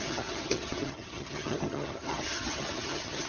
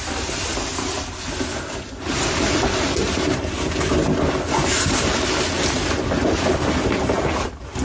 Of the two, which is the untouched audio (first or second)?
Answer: second